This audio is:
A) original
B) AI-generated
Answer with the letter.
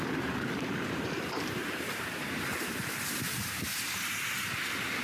B